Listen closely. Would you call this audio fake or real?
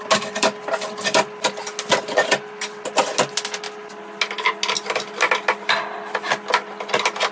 real